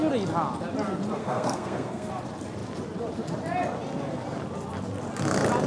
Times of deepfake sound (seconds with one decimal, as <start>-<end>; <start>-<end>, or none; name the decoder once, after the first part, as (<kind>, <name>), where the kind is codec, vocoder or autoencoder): 1.2-2.1 (codec, SNAC)